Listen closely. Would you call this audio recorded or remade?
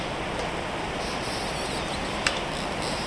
recorded